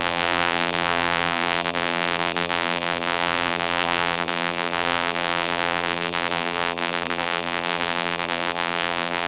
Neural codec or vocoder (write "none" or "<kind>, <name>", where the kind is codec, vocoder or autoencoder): vocoder, BigVGAN v2